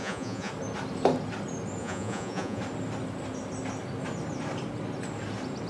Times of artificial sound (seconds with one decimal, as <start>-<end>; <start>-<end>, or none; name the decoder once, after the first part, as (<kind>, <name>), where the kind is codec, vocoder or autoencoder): 0.0-0.5 (vocoder, Vocos); 1.8-2.6